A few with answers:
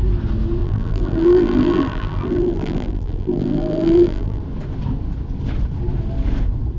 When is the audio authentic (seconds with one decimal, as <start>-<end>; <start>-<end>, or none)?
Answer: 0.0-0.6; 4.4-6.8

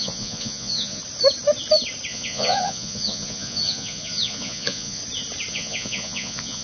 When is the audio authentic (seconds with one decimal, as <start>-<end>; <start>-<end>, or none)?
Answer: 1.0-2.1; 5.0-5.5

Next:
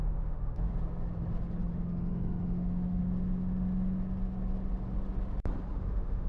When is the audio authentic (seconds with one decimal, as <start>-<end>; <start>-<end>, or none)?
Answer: 0.7-1.7; 3.0-5.8